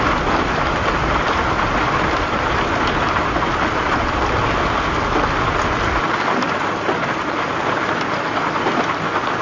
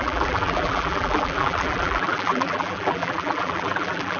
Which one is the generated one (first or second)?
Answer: second